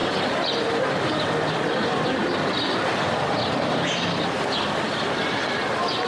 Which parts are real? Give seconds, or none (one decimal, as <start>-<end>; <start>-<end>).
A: 0.0-6.1